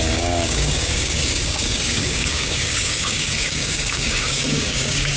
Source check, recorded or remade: remade